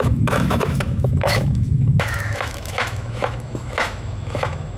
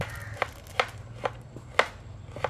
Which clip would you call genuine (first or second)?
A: second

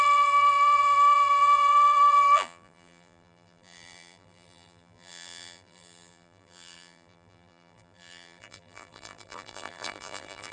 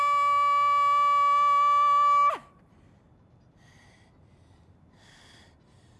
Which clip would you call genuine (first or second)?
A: second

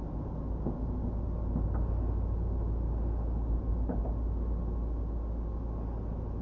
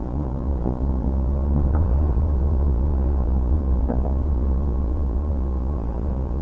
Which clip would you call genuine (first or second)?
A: first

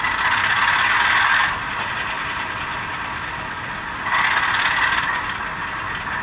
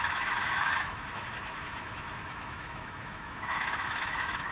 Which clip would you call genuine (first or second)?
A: first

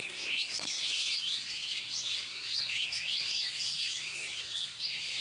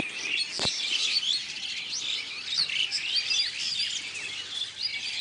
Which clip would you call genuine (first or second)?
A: second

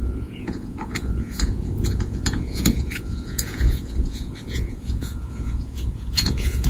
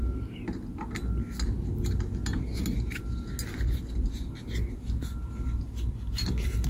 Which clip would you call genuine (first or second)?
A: second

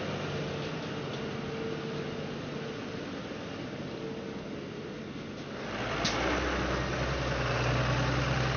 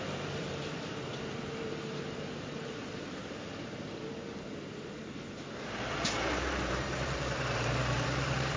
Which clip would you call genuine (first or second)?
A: first